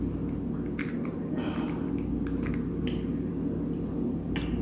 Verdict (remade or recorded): recorded